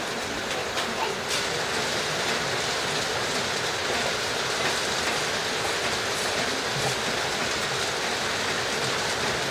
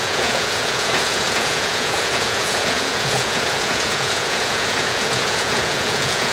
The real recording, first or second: first